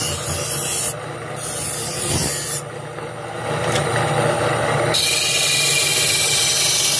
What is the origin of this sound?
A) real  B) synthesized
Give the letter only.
A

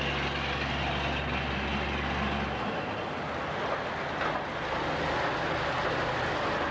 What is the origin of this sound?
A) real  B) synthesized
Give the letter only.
A